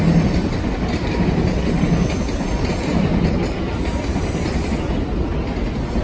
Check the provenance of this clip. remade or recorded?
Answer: recorded